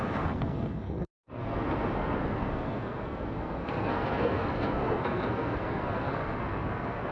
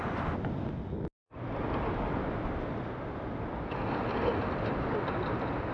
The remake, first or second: first